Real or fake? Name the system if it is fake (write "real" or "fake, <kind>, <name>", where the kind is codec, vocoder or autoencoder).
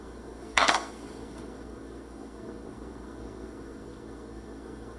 fake, codec, SNAC